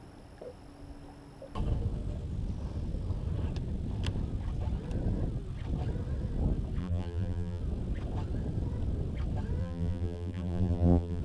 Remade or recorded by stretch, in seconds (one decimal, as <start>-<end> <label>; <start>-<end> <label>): 0.0-6.8 recorded; 6.8-7.6 remade; 7.6-9.6 recorded; 9.6-11.2 remade